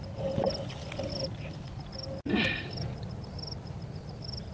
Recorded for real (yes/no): yes